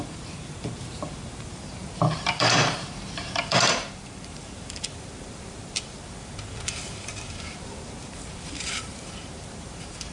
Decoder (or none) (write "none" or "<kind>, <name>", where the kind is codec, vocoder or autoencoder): vocoder, BigVGAN v2